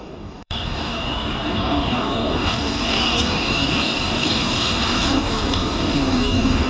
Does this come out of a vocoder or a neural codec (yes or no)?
yes